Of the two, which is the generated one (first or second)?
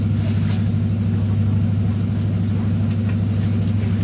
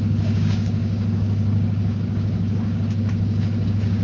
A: second